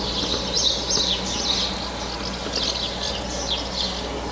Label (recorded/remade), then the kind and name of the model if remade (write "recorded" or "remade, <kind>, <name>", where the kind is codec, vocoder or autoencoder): recorded